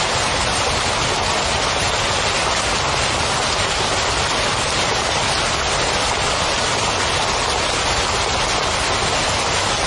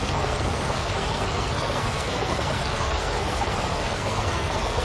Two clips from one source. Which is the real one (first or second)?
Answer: first